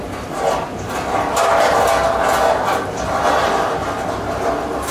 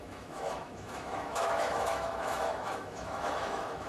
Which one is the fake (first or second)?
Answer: second